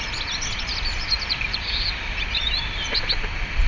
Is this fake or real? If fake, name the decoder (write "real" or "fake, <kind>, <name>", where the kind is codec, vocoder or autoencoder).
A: real